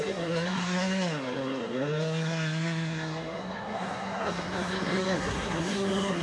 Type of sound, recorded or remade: remade